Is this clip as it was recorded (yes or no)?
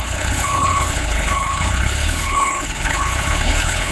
no